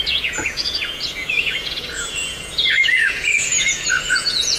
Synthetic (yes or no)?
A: yes